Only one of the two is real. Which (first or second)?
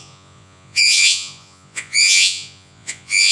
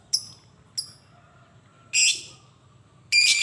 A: second